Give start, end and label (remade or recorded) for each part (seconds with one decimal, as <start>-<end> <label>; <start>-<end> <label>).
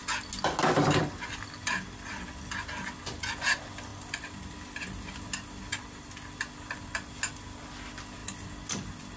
0.0-9.2 recorded